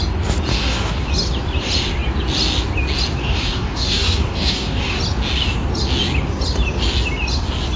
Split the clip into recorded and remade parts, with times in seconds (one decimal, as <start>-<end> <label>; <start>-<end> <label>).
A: 0.0-0.5 recorded; 0.5-1.0 remade; 1.0-3.2 recorded; 3.2-5.0 remade; 5.0-7.8 recorded